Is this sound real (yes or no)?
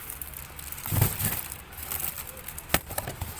yes